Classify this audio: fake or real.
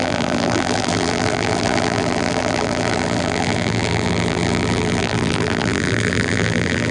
fake